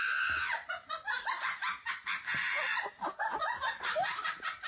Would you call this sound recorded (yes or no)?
no